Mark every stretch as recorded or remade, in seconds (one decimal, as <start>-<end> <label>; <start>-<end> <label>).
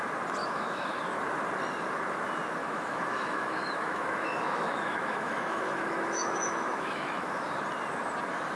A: 0.0-0.4 recorded; 0.4-1.0 remade; 1.0-2.6 recorded; 2.6-7.3 remade; 7.3-8.6 recorded